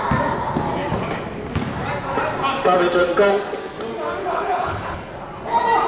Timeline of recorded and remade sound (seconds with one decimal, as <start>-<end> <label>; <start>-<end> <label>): 0.0-4.2 recorded; 4.2-5.1 remade; 5.1-5.9 recorded